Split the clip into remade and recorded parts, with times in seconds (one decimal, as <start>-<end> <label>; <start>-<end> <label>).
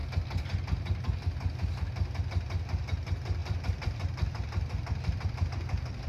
0.0-3.4 recorded; 3.4-5.5 remade; 5.5-6.1 recorded